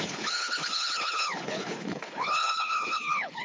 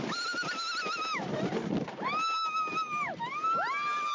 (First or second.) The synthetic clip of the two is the first